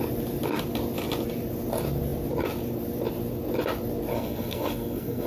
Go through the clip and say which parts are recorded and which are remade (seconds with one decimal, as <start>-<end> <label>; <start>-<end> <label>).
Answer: 0.0-4.1 recorded; 4.1-5.3 remade